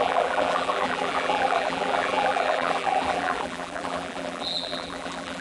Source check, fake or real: fake